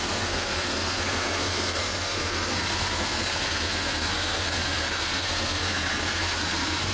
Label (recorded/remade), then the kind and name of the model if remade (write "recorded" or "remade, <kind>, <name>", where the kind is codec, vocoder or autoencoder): remade, codec, SNAC